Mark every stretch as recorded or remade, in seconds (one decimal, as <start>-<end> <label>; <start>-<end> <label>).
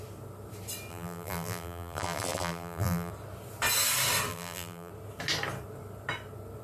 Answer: 0.0-0.9 recorded; 0.9-3.1 remade; 3.1-4.3 recorded; 4.3-4.9 remade; 4.9-6.6 recorded